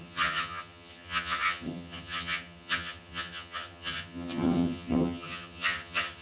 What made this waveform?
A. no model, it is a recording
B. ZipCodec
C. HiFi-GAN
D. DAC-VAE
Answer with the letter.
C